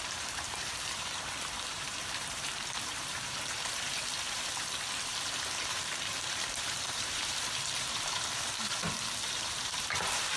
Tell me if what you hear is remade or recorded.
remade